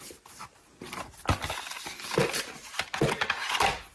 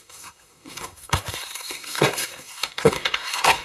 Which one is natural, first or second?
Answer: first